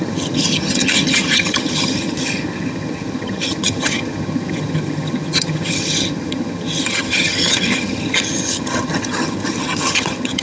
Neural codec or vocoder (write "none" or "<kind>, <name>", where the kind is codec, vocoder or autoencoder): vocoder, HiFi-GAN